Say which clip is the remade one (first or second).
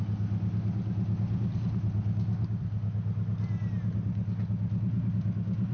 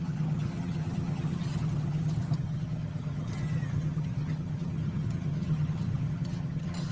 second